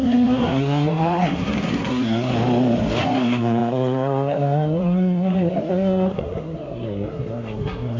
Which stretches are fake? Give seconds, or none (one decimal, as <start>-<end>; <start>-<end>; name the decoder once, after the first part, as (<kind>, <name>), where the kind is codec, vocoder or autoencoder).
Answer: 0.0-2.3 (codec, SNAC); 3.0-8.0